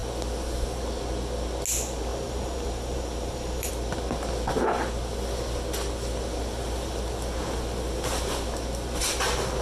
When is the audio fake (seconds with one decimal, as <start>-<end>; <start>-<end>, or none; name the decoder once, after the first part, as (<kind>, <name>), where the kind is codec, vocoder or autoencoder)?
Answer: 2.1-3.7 (vocoder, BigVGAN v2)